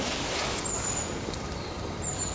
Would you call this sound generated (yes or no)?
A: no